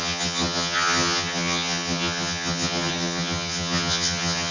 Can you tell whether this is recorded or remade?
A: remade